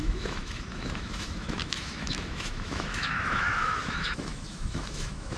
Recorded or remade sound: remade